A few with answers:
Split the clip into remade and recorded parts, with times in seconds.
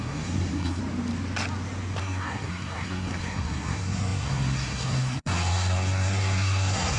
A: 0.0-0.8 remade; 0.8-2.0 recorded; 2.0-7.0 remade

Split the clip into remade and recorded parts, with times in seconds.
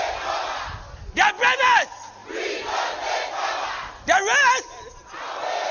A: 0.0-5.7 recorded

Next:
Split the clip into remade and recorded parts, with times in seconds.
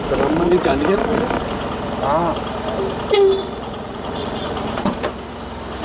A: 0.0-0.5 recorded; 0.5-1.2 remade; 1.2-3.4 recorded; 3.4-4.9 remade; 4.9-5.8 recorded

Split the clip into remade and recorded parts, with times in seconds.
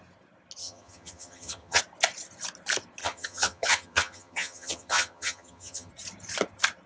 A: 0.0-0.6 recorded; 0.6-1.8 remade; 1.8-3.0 recorded; 3.0-5.9 remade; 5.9-6.9 recorded